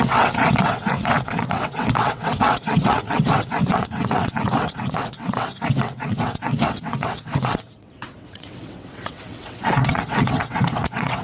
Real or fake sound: fake